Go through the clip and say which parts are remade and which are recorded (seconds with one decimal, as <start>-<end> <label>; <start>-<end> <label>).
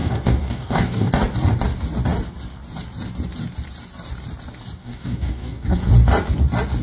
0.0-1.1 remade; 1.1-4.8 recorded; 4.8-5.9 remade; 5.9-6.8 recorded